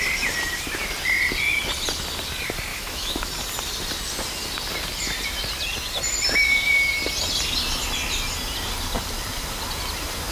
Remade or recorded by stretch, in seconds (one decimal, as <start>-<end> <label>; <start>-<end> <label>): 0.0-2.7 recorded; 2.7-3.3 remade; 3.3-10.3 recorded